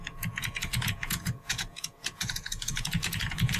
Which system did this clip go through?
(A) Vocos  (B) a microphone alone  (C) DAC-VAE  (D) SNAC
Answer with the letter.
A